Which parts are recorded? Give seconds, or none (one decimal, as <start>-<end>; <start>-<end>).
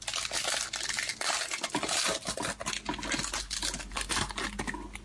0.0-5.0